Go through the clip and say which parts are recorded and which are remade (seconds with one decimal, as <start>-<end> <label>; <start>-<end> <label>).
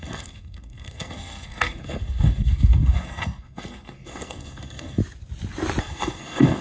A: 0.0-5.0 remade; 5.0-5.8 recorded; 5.8-6.6 remade